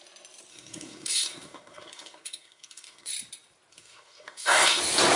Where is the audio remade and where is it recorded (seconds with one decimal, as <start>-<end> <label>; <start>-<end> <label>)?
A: 0.0-0.5 recorded; 0.5-3.1 remade; 3.1-3.7 recorded; 3.7-4.8 remade; 4.8-5.2 recorded